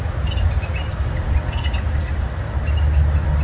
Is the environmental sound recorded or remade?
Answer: recorded